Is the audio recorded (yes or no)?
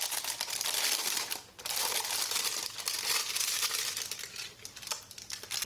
yes